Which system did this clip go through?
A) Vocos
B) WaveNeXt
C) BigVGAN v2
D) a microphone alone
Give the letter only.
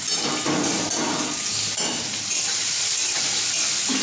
D